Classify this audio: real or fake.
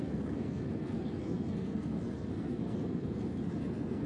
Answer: fake